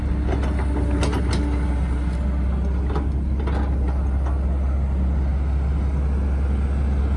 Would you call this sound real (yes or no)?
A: yes